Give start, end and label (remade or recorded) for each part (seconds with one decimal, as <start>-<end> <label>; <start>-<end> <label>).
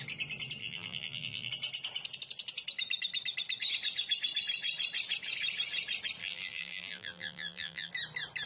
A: 0.0-0.6 recorded; 0.6-1.5 remade; 1.5-6.2 recorded; 6.2-7.9 remade; 7.9-8.5 recorded